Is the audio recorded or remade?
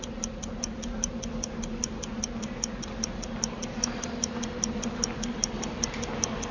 recorded